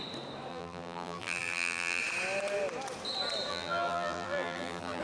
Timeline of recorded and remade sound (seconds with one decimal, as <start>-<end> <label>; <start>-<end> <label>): 0.0-0.5 recorded; 0.5-2.0 remade; 2.0-3.5 recorded; 3.5-5.0 remade